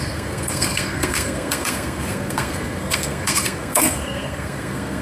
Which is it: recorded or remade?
remade